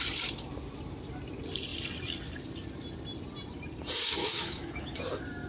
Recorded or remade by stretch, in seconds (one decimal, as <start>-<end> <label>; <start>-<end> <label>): 0.0-4.2 recorded; 4.2-5.0 remade; 5.0-5.5 recorded